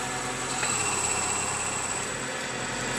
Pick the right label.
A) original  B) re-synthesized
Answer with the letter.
A